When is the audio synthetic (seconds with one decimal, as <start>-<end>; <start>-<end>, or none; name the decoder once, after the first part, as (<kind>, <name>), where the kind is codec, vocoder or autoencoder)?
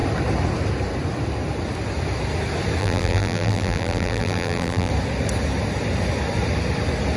2.8-4.9 (vocoder, BigVGAN v2)